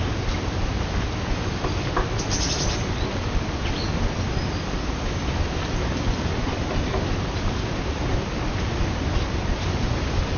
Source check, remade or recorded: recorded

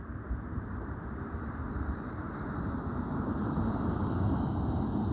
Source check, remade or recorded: remade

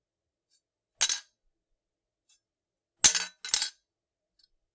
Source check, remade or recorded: recorded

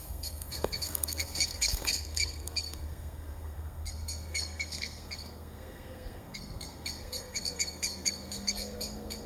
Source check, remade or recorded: remade